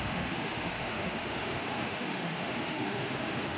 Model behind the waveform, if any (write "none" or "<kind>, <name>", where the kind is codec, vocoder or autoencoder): autoencoder, DAC-VAE